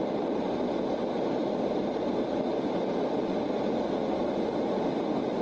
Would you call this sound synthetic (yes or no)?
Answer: no